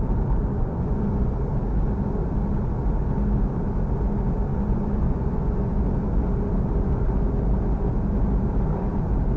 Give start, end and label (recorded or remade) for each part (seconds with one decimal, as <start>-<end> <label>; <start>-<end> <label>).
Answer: 0.0-0.5 recorded; 0.5-1.3 remade; 1.3-4.5 recorded; 4.5-5.8 remade; 5.8-9.4 recorded